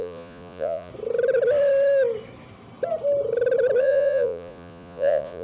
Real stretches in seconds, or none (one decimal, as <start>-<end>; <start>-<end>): 0.9-3.8